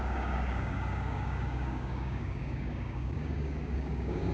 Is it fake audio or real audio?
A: fake